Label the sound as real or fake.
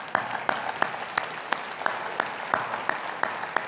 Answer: real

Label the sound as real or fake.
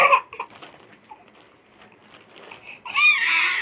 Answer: fake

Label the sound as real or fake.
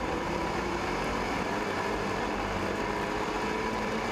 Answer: fake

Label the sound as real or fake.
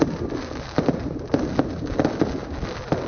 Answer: real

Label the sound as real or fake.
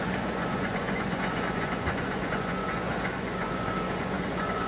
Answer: fake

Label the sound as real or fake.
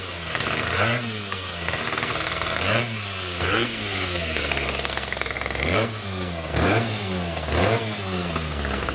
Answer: fake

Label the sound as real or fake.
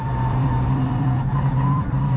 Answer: fake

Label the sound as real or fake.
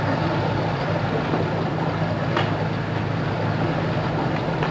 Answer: real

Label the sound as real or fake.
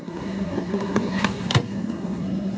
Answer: fake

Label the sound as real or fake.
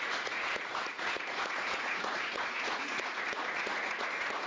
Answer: fake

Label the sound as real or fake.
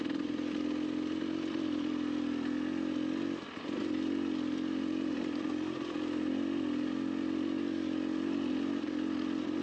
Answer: real